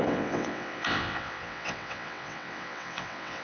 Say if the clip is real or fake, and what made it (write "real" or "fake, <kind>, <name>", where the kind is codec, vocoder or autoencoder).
fake, vocoder, WaveNeXt